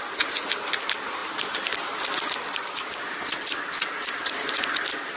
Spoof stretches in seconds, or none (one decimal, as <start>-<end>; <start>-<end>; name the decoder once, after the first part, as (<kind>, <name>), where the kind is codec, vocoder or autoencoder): none